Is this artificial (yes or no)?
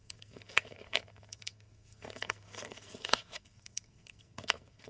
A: yes